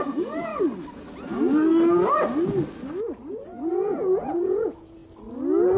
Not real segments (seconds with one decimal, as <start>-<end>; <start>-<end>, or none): 0.0-0.5; 3.3-5.0